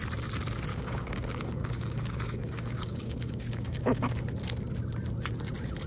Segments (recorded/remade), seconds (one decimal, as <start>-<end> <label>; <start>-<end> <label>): 0.0-0.7 recorded; 0.7-4.2 remade; 4.2-5.9 recorded